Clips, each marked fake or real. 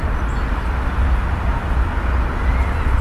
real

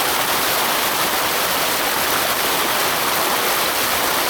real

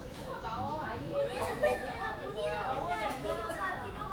fake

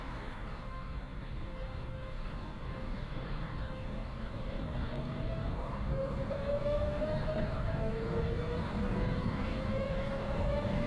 fake